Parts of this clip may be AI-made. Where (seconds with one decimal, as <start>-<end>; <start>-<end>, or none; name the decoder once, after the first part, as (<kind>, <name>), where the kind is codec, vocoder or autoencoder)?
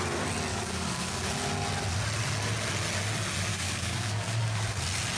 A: 0.5-1.3 (codec, DAC); 3.5-4.8